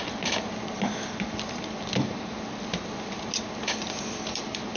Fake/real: real